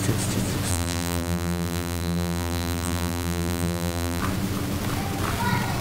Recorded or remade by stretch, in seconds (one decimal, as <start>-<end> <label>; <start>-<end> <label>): 0.0-0.7 recorded; 0.7-4.2 remade; 4.2-5.8 recorded

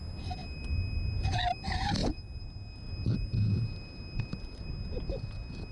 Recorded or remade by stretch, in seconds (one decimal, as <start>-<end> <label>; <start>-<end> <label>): 0.0-5.7 recorded

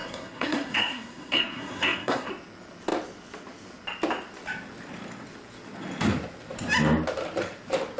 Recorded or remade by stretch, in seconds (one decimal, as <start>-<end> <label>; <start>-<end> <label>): 0.0-2.3 remade; 2.3-8.0 recorded

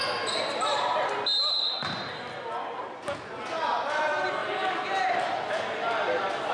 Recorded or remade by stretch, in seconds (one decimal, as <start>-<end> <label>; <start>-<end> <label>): 0.0-4.4 recorded; 4.4-6.5 remade

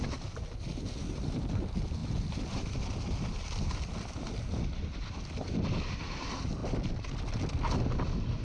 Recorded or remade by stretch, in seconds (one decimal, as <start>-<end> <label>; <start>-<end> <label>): 0.0-2.0 recorded; 2.0-6.1 remade; 6.1-8.4 recorded

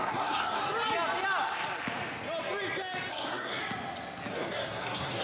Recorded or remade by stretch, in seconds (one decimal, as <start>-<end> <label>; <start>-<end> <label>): 0.0-0.6 remade; 0.6-3.1 recorded; 3.1-3.6 remade; 3.6-4.3 recorded; 4.3-5.2 remade

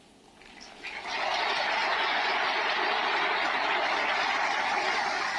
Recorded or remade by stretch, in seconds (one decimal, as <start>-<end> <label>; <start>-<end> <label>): 0.0-1.8 recorded; 1.8-2.4 remade; 2.4-5.4 recorded